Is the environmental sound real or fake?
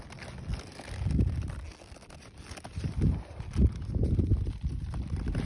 real